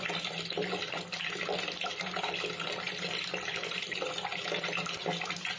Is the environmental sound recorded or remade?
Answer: recorded